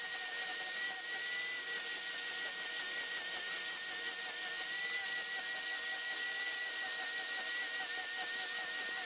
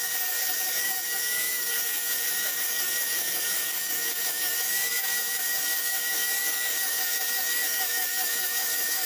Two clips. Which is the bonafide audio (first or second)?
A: first